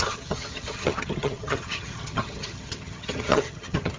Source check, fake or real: fake